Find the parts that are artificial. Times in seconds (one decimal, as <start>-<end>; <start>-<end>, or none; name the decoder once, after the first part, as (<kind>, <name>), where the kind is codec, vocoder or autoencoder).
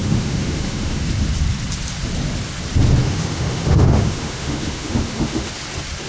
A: 0.0-1.0 (autoencoder, DAC-VAE); 3.0-5.5